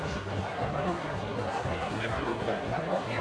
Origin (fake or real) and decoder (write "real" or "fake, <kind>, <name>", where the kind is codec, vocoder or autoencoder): fake, codec, SNAC